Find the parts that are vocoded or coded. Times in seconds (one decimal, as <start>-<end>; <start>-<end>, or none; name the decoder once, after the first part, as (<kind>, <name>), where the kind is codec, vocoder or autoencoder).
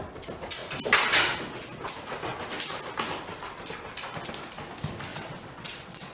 5.1-6.1 (vocoder, WaveNeXt)